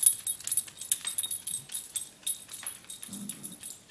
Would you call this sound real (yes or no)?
yes